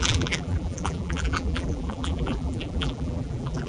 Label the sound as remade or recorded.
remade